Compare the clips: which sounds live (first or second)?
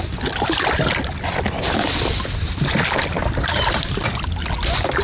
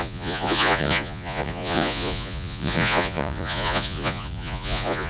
first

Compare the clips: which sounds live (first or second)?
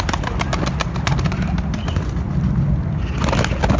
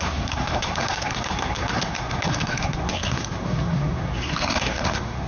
first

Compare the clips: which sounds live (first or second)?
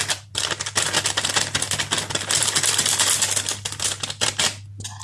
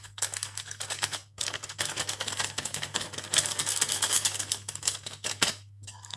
first